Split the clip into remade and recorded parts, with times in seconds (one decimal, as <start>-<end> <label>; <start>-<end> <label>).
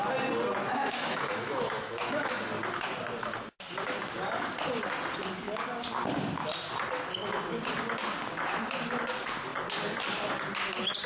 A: 0.0-0.6 recorded; 0.6-2.4 remade; 2.4-11.1 recorded